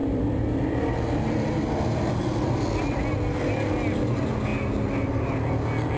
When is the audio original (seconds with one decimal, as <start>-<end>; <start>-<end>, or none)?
0.0-6.0